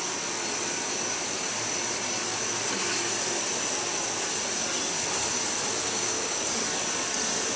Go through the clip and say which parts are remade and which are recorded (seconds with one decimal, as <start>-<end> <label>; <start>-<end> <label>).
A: 0.0-5.8 recorded; 5.8-6.4 remade; 6.4-7.6 recorded